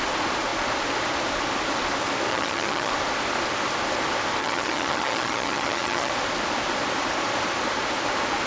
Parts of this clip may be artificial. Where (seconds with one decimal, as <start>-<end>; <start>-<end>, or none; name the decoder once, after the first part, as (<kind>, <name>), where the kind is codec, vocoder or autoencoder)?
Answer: 2.3-2.9 (vocoder, HiFi-GAN); 4.4-6.1